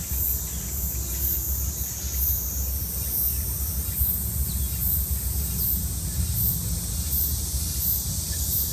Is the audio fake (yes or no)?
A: no